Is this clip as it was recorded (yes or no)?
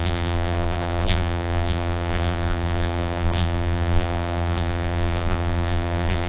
no